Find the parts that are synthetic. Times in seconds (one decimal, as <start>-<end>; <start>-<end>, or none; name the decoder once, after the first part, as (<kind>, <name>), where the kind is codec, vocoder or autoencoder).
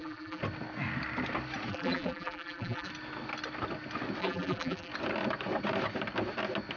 0.0-0.4 (vocoder, BigVGAN v2); 1.7-2.9; 4.2-4.9